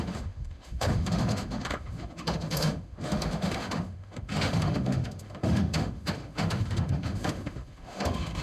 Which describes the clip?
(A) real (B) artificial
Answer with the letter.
B